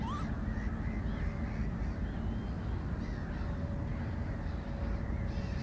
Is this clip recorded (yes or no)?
yes